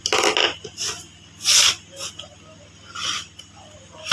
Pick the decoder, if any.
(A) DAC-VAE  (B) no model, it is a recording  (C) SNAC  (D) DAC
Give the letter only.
B